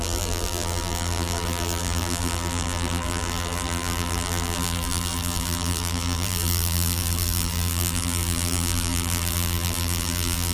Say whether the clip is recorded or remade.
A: remade